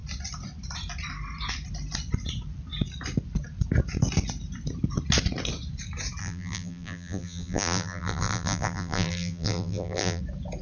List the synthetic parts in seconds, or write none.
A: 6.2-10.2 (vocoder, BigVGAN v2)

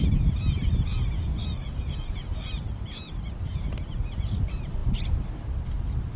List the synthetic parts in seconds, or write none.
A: 1.3-3.6 (vocoder, BigVGAN v2)

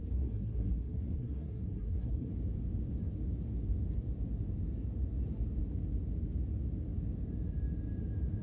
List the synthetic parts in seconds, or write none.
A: 0.0-2.3 (codec, SNAC)

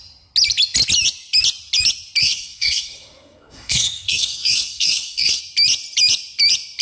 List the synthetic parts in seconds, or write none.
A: 2.2-5.4 (codec, SNAC)

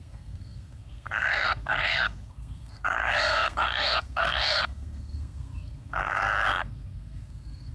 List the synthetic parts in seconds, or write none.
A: 0.0-7.7 (codec, SNAC)

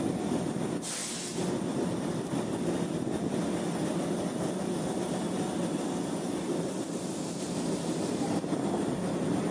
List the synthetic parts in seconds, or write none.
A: 0.0-1.0 (vocoder, BigVGAN v2); 1.7-9.5

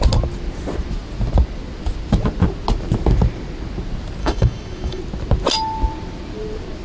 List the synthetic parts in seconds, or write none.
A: 4.2-5.0 (autoencoder, DAC-VAE)